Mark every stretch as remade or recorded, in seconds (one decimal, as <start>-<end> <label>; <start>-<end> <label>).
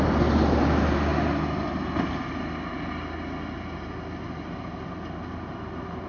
0.0-6.1 recorded